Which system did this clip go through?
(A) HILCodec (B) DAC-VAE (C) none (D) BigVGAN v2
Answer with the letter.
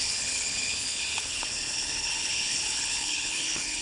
A